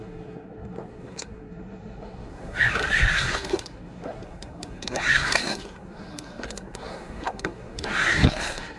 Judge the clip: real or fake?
fake